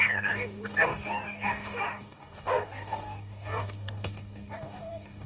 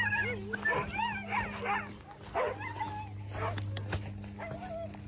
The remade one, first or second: first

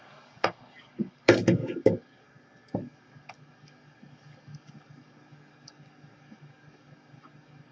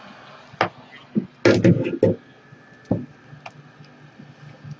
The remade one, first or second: first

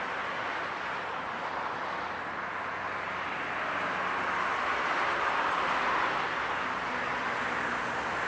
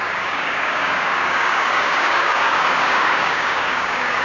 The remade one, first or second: second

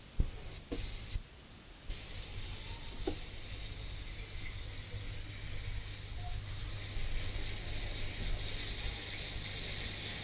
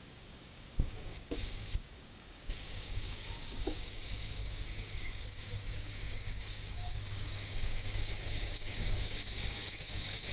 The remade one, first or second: second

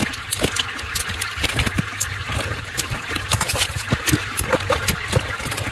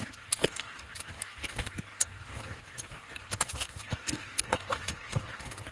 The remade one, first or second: second